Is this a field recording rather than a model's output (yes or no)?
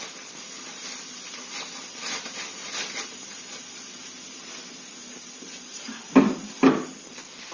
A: yes